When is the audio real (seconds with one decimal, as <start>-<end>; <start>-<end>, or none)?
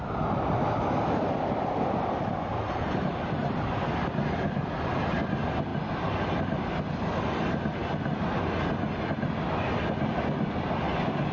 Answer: 0.0-11.3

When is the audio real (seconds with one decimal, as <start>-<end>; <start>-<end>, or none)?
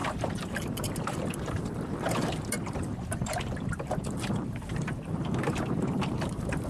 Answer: none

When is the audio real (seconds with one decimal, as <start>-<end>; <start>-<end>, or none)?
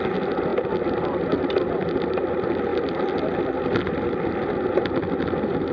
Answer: 0.0-5.7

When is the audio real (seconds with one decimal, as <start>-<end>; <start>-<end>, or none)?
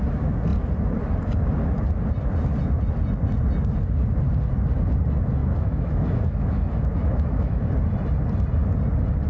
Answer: 0.0-5.4; 7.7-9.3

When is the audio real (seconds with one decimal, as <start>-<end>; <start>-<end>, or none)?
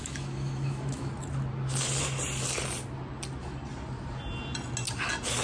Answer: 1.1-5.4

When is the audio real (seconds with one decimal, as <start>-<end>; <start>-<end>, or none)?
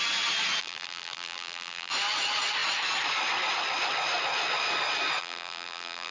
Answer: 0.0-0.6; 1.9-5.2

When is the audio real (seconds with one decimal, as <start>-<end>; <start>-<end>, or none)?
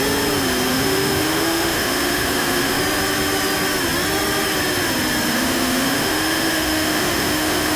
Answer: 0.0-0.7; 2.8-5.3